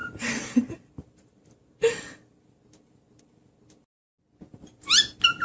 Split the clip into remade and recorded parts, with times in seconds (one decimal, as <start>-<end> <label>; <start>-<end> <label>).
0.0-5.4 recorded